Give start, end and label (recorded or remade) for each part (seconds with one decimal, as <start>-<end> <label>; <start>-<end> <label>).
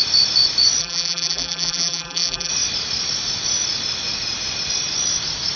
0.0-0.8 recorded; 0.8-2.5 remade; 2.5-5.6 recorded